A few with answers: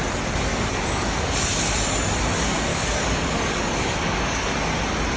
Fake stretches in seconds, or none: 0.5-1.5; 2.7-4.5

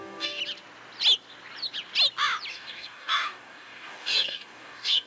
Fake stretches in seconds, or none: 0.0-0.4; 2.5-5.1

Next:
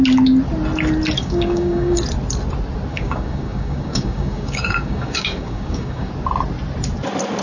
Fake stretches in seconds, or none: 1.2-2.0; 2.9-6.1

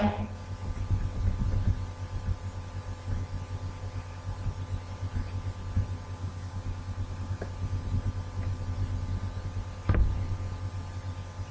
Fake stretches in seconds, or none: 6.2-7.5